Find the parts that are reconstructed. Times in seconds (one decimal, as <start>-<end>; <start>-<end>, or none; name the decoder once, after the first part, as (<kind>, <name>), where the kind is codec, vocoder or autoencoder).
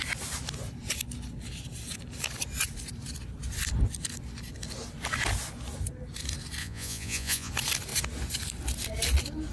6.6-7.5 (vocoder, Vocos)